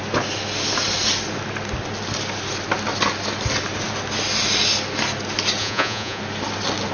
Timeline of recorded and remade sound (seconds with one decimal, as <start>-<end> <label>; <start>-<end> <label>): 0.0-5.6 recorded; 5.6-6.2 remade; 6.2-6.9 recorded